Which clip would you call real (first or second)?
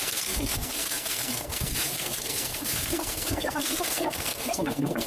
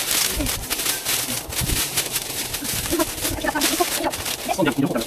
second